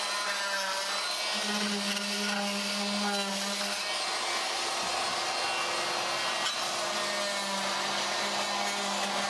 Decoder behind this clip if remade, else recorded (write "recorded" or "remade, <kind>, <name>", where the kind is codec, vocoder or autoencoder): recorded